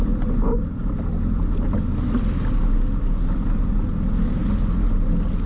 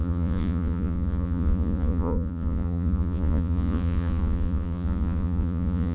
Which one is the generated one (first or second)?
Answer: second